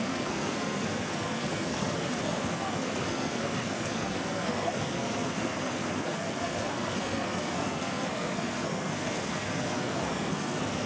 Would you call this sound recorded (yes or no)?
no